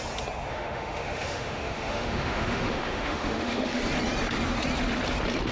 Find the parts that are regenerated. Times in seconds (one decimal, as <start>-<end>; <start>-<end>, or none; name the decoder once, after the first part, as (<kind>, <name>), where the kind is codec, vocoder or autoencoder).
0.5-3.8 (autoencoder, DAC-VAE)